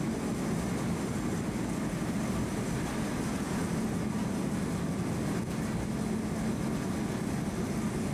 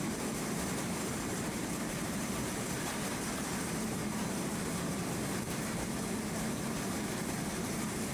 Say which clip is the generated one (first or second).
second